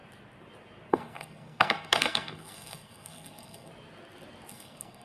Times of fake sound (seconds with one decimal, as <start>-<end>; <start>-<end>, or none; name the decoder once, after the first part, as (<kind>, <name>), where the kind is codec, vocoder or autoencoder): 0.9-3.7 (codec, SNAC); 4.5-5.0